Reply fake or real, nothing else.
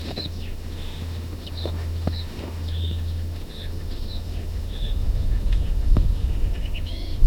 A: fake